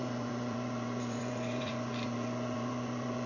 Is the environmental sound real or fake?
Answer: fake